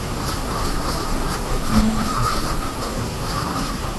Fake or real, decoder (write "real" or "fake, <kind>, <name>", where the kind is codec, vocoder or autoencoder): fake, codec, SNAC